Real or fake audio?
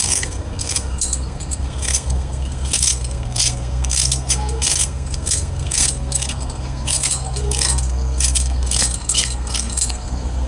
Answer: fake